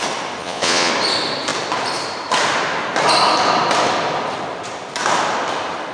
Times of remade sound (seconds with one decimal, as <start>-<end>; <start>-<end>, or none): 0.4-0.9